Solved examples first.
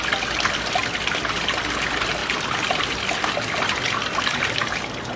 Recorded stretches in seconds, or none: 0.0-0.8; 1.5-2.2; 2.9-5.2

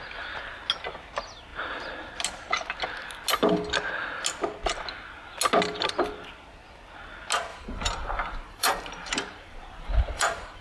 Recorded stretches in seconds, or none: 0.0-7.5

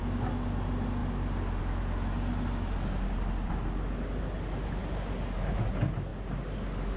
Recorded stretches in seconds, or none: 0.0-7.0